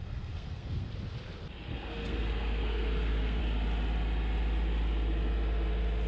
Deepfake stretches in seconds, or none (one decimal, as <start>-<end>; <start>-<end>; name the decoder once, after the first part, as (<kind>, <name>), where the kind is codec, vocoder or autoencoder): 0.0-0.9 (codec, SNAC); 1.7-3.4